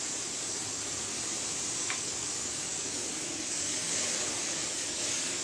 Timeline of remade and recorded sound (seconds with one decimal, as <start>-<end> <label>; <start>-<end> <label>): 0.0-1.1 remade; 1.1-1.8 recorded; 1.8-5.4 remade